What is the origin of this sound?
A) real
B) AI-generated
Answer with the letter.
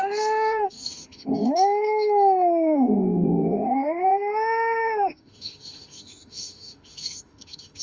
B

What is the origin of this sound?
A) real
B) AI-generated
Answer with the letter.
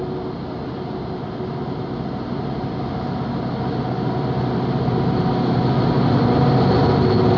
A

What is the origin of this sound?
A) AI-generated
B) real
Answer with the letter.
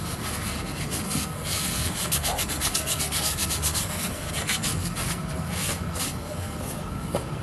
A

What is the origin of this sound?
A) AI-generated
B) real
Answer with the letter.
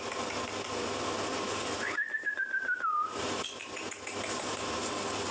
B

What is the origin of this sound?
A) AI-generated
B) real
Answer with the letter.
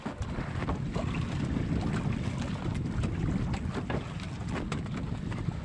B